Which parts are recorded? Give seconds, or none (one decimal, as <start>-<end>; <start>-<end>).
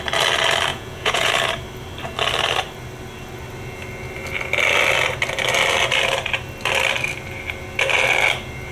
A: 0.0-0.7; 1.3-8.7